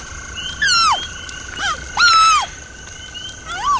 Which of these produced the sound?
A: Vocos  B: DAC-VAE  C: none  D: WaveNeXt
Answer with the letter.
C